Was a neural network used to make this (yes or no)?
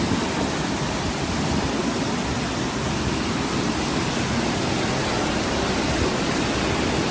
no